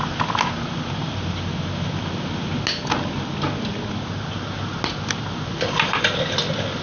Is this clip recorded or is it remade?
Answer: recorded